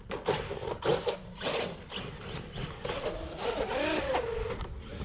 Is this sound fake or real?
real